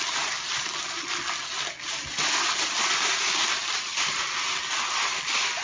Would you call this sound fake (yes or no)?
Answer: no